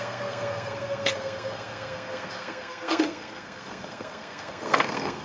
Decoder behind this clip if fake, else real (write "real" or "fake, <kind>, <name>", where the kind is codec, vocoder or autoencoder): fake, codec, SNAC